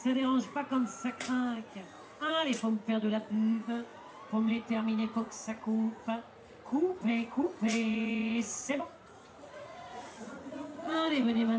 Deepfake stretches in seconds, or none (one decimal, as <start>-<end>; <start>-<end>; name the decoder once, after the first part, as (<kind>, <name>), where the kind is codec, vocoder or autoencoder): 0.0-11.6 (vocoder, Vocos)